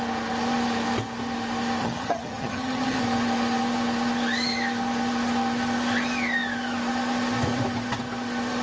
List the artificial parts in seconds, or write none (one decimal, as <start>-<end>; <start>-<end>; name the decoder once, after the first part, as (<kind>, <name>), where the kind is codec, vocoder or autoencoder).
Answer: 1.8-3.0 (vocoder, HiFi-GAN)